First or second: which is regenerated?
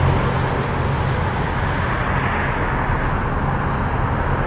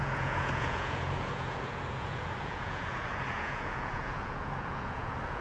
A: second